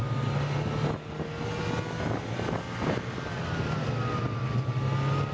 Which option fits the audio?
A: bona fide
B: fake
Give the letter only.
A